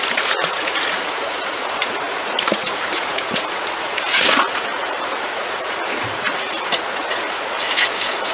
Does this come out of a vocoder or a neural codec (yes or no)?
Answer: yes